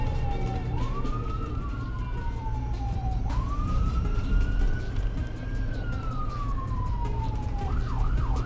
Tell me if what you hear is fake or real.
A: fake